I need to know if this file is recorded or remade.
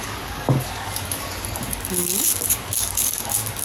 remade